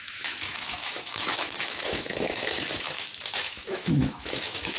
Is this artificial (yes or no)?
yes